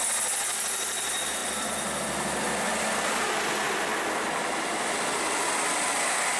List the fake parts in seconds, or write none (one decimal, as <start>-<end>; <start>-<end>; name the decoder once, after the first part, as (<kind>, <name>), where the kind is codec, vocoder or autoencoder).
none